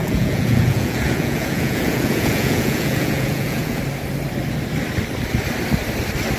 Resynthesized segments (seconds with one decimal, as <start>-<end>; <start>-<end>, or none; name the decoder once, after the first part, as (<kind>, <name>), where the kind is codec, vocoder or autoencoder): 0.0-3.8 (vocoder, Vocos)